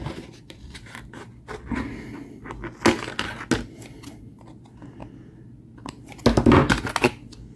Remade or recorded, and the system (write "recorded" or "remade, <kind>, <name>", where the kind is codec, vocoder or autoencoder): recorded